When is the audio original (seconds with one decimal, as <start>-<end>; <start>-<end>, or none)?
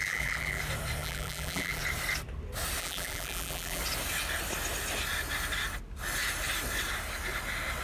0.6-1.0; 1.8-2.8; 3.8-7.8